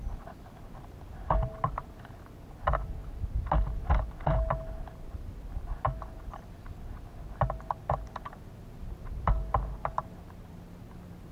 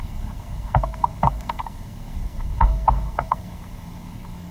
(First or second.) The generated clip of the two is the second